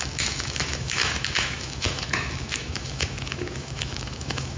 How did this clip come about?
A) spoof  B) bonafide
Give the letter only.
A